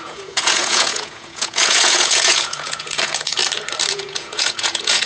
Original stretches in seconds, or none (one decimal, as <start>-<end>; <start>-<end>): 3.4-3.9